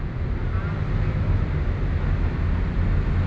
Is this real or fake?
real